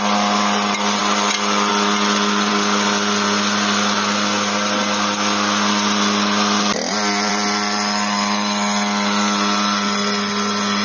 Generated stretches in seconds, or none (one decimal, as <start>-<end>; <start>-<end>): none